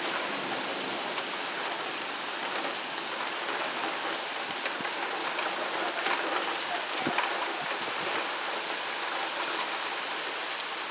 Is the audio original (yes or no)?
yes